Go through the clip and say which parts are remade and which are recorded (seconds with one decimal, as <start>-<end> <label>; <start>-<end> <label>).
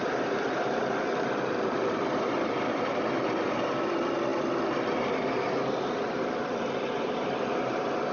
0.0-8.1 remade